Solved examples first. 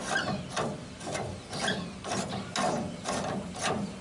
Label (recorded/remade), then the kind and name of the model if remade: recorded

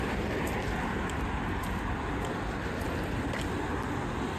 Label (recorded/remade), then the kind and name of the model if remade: recorded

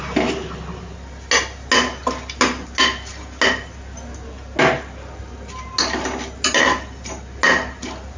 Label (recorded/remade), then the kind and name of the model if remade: recorded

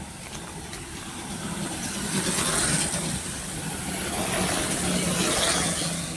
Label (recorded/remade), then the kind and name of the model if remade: recorded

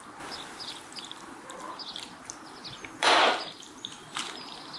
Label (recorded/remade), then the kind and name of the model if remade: recorded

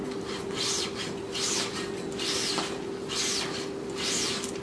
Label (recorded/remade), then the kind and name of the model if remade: recorded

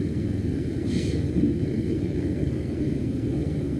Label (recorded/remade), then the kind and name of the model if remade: remade, codec, SNAC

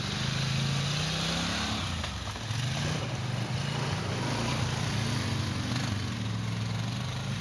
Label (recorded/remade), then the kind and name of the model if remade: recorded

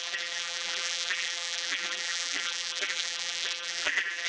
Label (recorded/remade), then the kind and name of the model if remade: remade, vocoder, BigVGAN v2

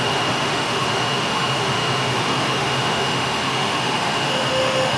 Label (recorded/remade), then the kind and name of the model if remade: remade, autoencoder, DAC-VAE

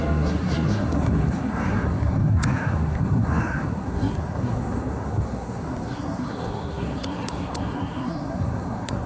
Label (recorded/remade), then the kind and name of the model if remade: remade, codec, SNAC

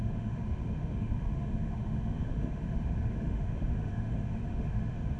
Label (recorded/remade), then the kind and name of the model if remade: remade, autoencoder, DAC-VAE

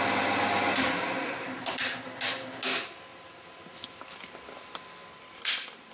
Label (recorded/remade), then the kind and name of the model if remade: recorded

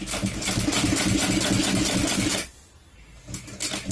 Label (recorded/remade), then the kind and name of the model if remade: recorded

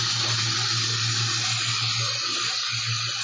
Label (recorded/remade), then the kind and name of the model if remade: recorded